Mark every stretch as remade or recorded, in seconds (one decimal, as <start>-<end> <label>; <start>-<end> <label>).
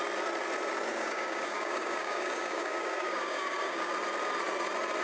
0.0-0.9 recorded; 0.9-3.9 remade; 3.9-5.0 recorded